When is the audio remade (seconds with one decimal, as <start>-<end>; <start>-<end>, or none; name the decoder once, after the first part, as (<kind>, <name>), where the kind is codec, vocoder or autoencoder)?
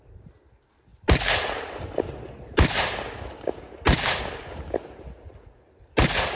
none